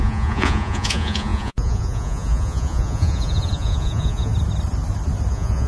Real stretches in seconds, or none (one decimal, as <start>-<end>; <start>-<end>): 4.3-5.3

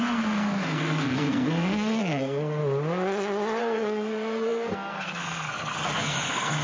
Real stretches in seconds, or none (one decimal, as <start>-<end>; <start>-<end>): 2.6-3.6